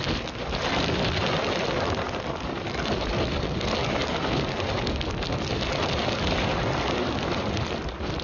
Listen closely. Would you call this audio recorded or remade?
recorded